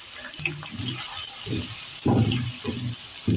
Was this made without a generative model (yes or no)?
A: yes